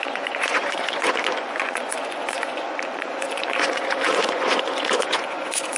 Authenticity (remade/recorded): remade